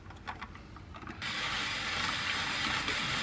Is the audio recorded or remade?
recorded